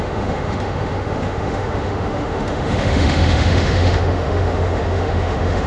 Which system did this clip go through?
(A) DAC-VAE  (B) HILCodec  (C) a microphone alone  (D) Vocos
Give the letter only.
A